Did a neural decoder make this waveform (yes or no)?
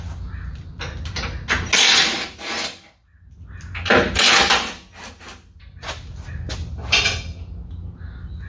no